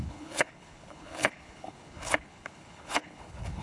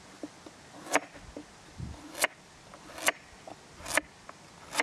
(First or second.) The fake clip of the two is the first